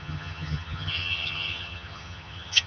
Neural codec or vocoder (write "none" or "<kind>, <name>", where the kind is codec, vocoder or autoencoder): vocoder, HiFi-GAN